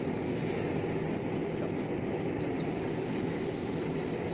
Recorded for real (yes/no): yes